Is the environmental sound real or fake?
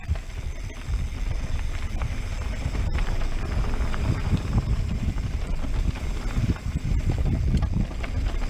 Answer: real